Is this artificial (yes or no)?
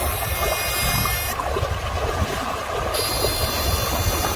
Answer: no